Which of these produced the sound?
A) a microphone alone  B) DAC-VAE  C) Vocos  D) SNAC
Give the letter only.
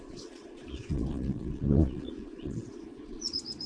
C